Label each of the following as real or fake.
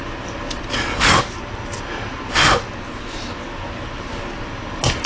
real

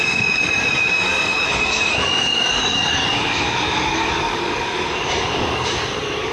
fake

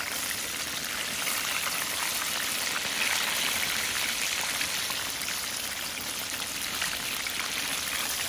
real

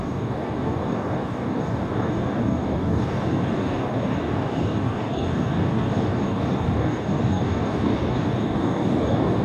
fake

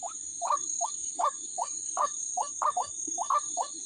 fake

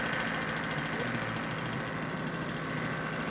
real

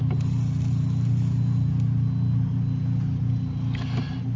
real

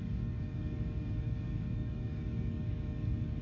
fake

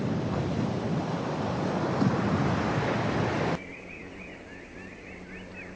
real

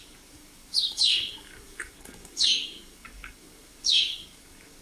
fake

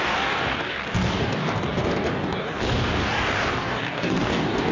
fake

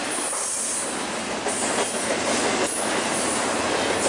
real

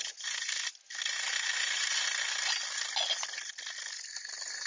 real